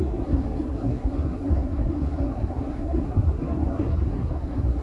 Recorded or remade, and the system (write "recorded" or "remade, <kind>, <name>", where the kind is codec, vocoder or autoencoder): remade, codec, SNAC